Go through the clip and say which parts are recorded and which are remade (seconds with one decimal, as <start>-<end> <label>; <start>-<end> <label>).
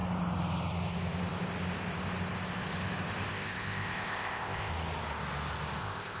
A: 0.0-3.3 recorded; 3.3-4.7 remade; 4.7-5.8 recorded; 5.8-6.2 remade